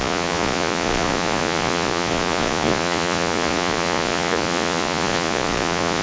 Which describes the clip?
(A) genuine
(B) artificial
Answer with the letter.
B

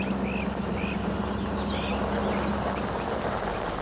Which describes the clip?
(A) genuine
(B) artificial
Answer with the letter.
A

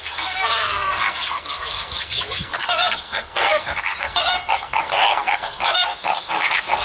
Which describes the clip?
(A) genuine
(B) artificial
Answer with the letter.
B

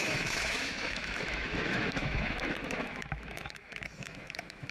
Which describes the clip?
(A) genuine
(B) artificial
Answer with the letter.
B